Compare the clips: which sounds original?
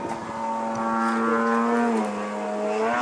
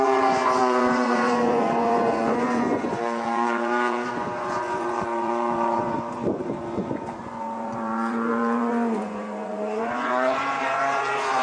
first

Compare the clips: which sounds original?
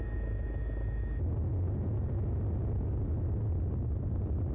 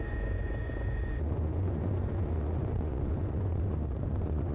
first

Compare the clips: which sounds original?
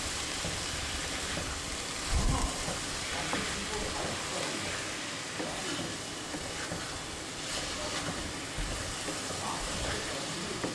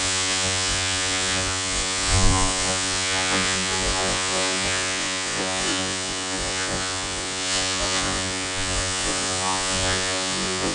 first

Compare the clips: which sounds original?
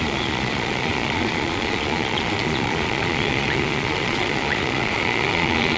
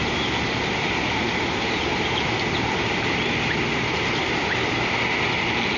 second